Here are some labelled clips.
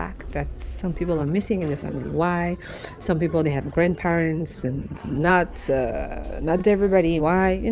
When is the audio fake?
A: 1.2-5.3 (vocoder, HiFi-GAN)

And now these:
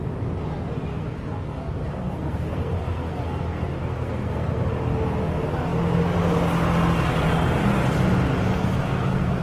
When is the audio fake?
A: 0.9-4.7 (codec, SNAC); 8.5-9.4

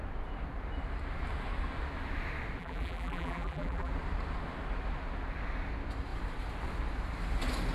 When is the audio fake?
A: 2.6-3.9 (vocoder, BigVGAN v2)